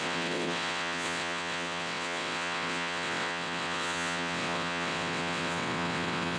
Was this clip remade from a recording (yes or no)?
yes